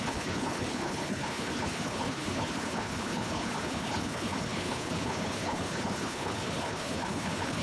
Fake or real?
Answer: fake